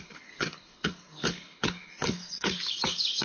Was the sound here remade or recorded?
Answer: remade